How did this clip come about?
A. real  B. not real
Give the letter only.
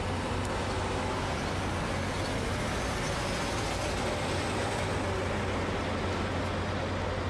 A